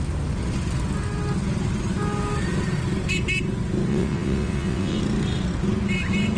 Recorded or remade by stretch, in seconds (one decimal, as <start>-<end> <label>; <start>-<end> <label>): 0.0-3.9 recorded; 3.9-5.0 remade; 5.0-6.4 recorded